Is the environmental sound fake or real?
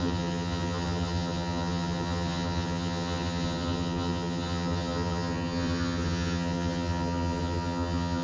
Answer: fake